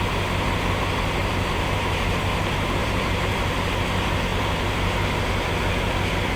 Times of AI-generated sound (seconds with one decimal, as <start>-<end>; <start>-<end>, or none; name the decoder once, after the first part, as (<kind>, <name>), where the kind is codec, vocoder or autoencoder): 1.2-2.4 (vocoder, BigVGAN v2); 2.8-3.7; 4.3-5.5